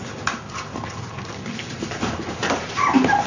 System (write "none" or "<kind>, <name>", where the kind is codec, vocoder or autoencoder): none